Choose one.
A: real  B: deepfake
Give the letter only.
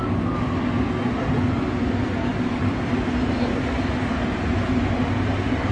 A